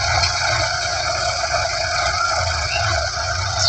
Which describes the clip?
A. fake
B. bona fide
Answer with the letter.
A